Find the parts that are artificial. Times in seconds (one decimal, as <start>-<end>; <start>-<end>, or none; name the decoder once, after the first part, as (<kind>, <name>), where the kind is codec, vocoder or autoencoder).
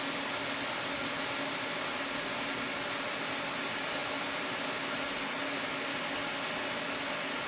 none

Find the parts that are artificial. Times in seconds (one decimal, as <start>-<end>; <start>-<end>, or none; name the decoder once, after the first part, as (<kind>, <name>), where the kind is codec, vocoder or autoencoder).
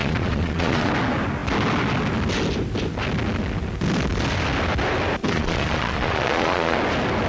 0.0-0.9 (vocoder, Vocos); 5.2-6.8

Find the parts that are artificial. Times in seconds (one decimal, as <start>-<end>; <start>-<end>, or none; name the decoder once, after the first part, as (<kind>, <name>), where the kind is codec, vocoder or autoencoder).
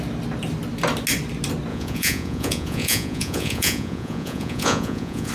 1.7-5.3 (vocoder, Vocos)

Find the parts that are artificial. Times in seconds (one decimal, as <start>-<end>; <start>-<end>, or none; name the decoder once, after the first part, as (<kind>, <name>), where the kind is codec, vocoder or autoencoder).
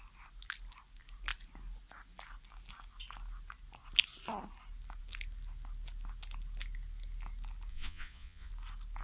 7.7-8.5 (vocoder, Vocos)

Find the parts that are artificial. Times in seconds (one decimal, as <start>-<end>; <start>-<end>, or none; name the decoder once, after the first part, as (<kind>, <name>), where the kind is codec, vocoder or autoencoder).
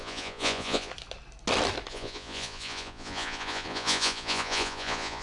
0.0-0.9 (vocoder, Vocos); 1.9-5.2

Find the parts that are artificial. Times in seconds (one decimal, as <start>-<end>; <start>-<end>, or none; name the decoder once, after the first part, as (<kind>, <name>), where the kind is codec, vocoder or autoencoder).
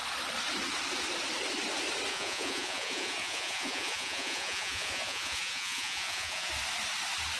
2.1-6.5 (vocoder, Vocos)